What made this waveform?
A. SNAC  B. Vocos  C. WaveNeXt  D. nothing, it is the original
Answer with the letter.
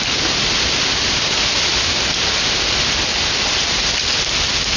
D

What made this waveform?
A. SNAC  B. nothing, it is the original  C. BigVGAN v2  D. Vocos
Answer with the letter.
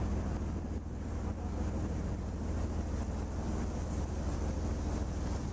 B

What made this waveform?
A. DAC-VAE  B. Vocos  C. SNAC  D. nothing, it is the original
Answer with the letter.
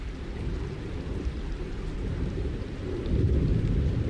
D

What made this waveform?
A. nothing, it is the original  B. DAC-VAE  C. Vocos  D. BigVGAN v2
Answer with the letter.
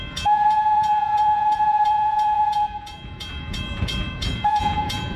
C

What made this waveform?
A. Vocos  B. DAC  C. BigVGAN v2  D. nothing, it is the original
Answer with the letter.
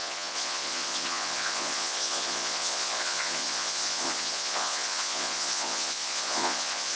A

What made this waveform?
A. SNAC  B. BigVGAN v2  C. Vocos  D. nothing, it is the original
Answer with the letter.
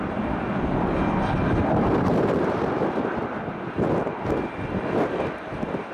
D